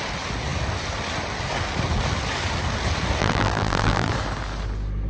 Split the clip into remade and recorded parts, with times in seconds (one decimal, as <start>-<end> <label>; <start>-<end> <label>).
0.0-3.2 recorded; 3.2-4.1 remade; 4.1-5.1 recorded

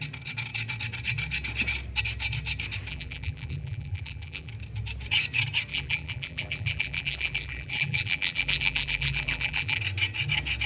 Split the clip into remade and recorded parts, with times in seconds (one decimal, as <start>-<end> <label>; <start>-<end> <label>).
0.0-2.9 recorded; 2.9-4.5 remade; 4.5-5.7 recorded; 5.7-9.8 remade; 9.8-10.7 recorded